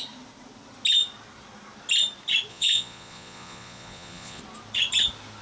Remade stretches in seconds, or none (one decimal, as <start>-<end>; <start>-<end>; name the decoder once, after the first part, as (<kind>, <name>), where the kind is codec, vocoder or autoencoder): 2.5-4.4 (vocoder, Vocos)